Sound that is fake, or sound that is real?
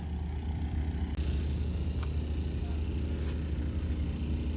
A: real